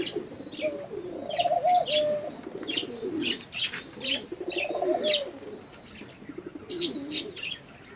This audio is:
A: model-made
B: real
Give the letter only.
B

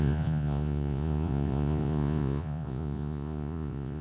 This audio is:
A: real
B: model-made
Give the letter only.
B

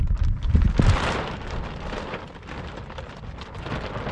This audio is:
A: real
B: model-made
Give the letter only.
A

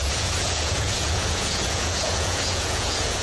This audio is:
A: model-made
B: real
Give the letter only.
A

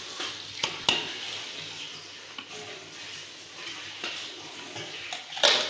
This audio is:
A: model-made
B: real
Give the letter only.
B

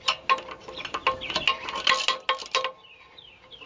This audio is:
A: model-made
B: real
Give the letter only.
B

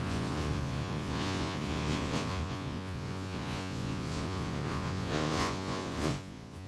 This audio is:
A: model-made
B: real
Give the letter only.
A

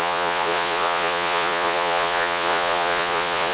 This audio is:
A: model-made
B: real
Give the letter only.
A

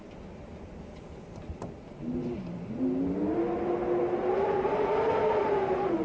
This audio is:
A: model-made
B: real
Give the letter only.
B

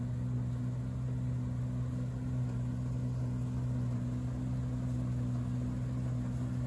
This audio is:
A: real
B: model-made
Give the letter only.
A